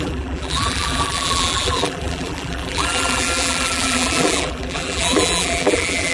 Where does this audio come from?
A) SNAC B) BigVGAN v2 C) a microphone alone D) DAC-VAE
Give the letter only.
B